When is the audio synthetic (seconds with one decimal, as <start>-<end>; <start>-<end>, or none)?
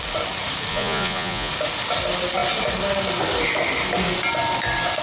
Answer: 0.7-1.5